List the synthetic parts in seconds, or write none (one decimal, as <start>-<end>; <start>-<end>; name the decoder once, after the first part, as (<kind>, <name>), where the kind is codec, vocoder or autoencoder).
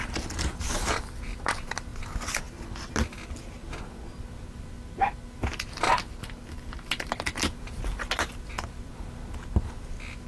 none